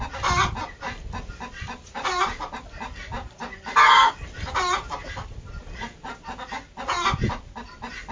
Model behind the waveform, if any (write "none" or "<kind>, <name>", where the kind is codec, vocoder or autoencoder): none